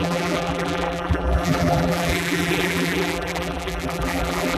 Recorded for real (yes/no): no